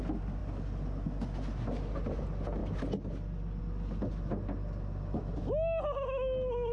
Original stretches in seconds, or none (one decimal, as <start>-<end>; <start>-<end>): 0.0-6.7